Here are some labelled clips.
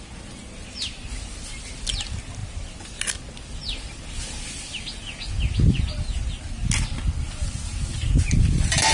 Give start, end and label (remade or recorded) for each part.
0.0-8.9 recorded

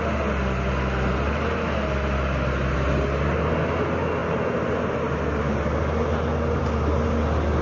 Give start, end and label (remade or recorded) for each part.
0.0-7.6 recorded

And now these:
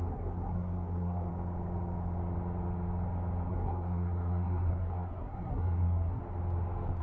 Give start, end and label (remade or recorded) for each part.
0.0-1.3 remade; 1.3-3.5 recorded; 3.5-6.2 remade; 6.2-7.0 recorded

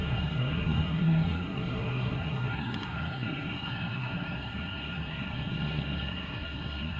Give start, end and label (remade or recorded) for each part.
0.0-7.0 remade

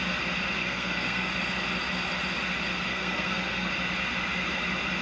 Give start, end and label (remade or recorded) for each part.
0.0-0.6 recorded; 0.6-1.3 remade; 1.3-2.9 recorded; 2.9-3.7 remade; 3.7-5.0 recorded

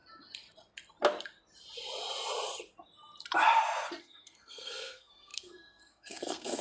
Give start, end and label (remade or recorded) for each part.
0.0-4.0 recorded; 4.0-6.6 remade

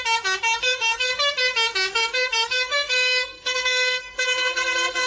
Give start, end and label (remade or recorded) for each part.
0.0-0.6 recorded; 0.6-1.1 remade; 1.1-1.9 recorded; 1.9-5.1 remade

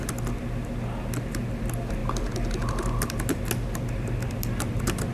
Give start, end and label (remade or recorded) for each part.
0.0-5.1 recorded